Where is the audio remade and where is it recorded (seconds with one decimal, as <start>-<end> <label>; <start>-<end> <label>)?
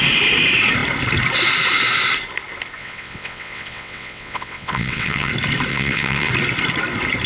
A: 0.0-2.8 recorded; 2.8-5.3 remade; 5.3-5.7 recorded; 5.7-6.3 remade; 6.3-7.3 recorded